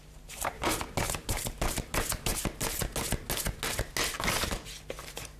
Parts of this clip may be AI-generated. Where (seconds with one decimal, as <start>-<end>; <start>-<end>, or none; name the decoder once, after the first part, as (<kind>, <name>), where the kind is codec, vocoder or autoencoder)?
0.0-2.3 (vocoder, BigVGAN v2); 5.0-5.4